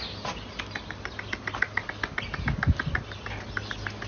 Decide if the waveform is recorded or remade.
recorded